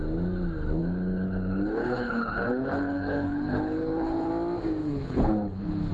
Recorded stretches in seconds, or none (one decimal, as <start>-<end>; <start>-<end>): 0.0-0.8; 4.3-4.8